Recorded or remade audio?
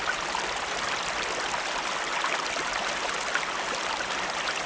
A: recorded